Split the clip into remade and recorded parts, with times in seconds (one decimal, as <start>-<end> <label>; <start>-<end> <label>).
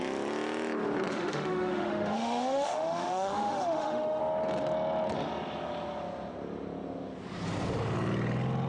0.0-1.1 recorded; 1.1-4.2 remade; 4.2-8.7 recorded